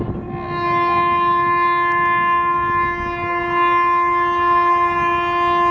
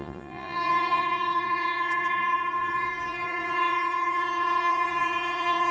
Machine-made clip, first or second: second